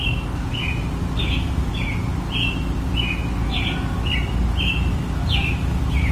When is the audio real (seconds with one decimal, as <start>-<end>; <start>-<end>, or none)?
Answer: 0.0-1.2; 1.7-4.9